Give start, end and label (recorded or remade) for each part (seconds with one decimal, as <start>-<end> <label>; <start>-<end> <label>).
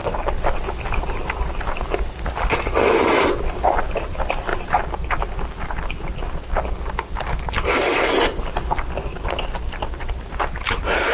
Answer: 0.0-11.1 recorded